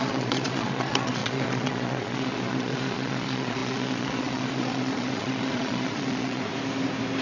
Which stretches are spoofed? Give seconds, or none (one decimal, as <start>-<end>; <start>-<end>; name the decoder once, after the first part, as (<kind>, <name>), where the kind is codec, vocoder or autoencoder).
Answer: 0.0-6.5 (vocoder, Vocos)